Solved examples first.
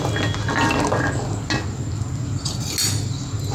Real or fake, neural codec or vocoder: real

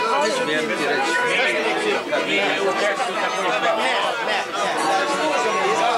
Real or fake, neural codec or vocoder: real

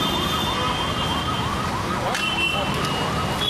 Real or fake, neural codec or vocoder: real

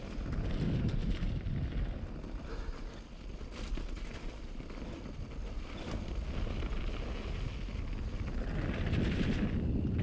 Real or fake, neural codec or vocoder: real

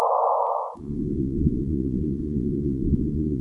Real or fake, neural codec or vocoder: fake, vocoder, Vocos